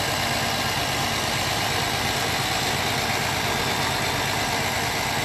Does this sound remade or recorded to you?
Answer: recorded